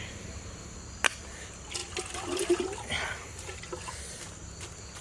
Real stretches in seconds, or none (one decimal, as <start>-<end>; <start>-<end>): 0.0-5.0